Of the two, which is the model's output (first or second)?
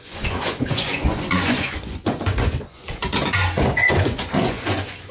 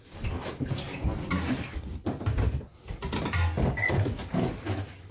first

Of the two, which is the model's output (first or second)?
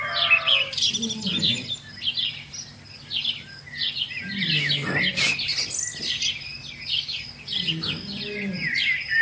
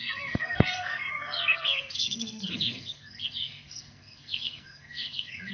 second